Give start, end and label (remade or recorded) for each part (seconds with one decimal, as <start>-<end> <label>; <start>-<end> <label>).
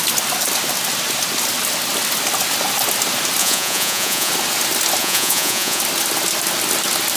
0.0-3.4 recorded; 3.4-4.3 remade; 4.3-5.0 recorded; 5.0-5.8 remade; 5.8-7.2 recorded